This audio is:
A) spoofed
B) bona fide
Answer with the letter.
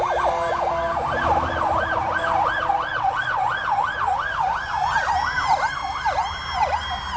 B